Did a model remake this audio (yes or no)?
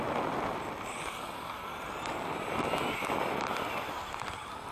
no